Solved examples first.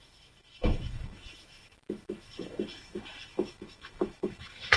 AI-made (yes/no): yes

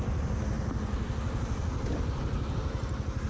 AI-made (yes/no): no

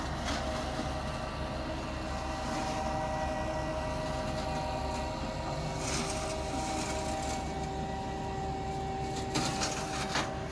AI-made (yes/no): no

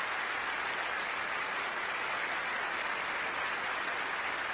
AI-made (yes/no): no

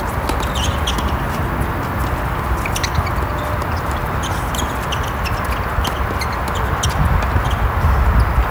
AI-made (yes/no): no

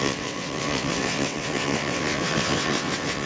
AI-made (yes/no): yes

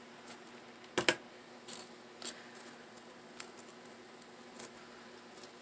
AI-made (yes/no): no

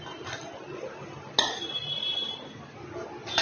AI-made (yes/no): no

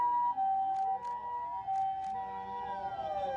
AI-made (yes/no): no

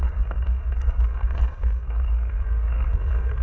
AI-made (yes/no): yes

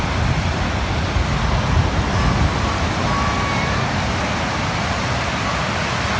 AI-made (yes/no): no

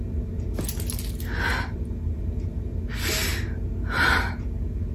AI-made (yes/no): no